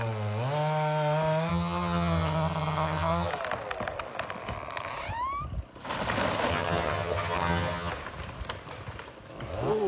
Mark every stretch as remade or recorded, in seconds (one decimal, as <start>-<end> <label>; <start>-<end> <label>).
0.0-1.5 recorded; 1.5-3.3 remade; 3.3-6.5 recorded; 6.5-7.9 remade; 7.9-9.9 recorded